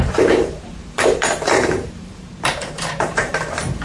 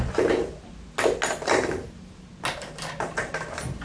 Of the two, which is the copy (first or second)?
first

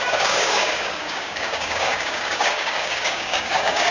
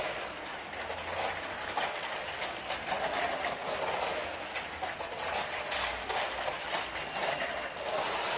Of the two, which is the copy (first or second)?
first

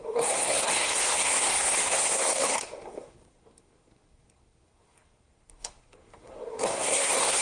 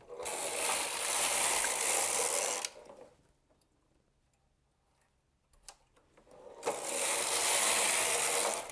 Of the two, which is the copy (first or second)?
first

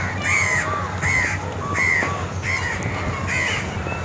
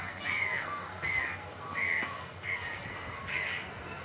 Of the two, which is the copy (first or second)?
second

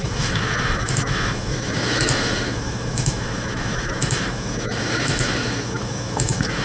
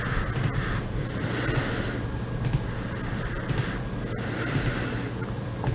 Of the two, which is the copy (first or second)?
first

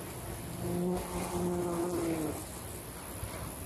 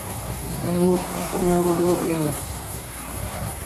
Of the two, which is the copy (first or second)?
second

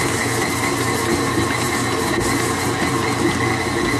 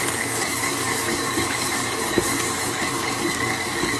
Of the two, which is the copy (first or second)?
second